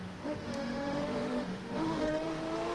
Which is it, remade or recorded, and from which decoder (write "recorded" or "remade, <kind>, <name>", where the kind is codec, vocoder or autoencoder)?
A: remade, autoencoder, DAC-VAE